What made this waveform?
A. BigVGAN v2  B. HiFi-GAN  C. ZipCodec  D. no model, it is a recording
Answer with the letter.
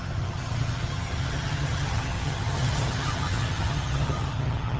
B